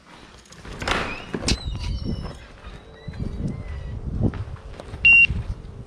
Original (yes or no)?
yes